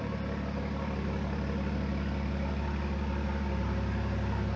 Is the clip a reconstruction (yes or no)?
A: no